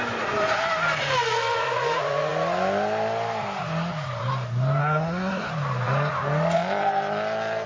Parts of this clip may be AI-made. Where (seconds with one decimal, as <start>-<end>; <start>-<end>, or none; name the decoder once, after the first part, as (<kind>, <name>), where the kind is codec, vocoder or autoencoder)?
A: 4.8-5.5 (codec, SNAC)